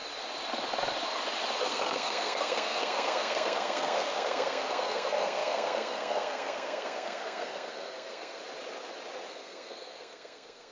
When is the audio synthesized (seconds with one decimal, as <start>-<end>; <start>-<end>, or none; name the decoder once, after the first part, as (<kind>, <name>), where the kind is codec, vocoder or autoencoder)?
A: 1.6-8.4 (codec, SNAC); 9.3-10.7